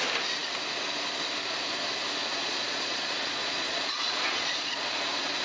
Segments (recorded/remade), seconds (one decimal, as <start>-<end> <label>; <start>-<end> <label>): 0.0-2.2 recorded; 2.2-5.4 remade